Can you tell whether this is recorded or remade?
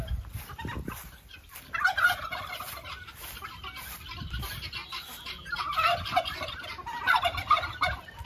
recorded